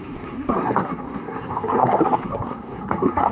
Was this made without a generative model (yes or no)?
no